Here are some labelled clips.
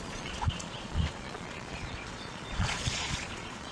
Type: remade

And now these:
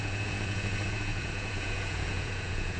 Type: remade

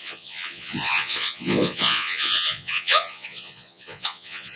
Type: remade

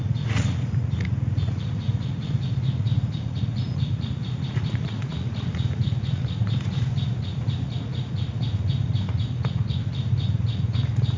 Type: remade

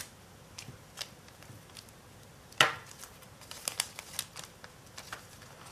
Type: recorded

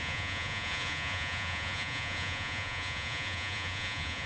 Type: remade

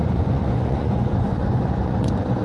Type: remade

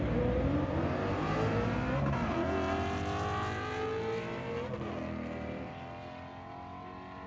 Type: recorded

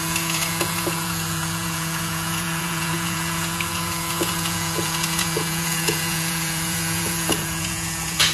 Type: remade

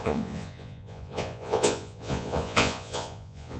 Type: remade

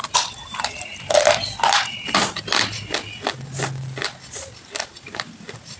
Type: recorded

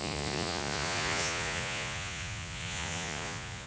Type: remade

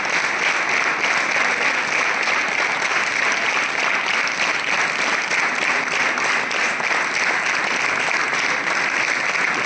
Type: recorded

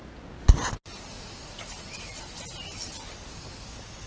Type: recorded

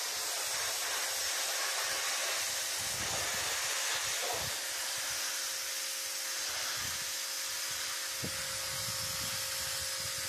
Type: recorded